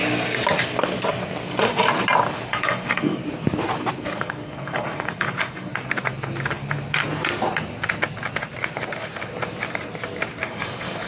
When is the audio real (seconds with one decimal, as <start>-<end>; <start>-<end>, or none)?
0.0-2.5; 3.2-4.1; 5.7-10.5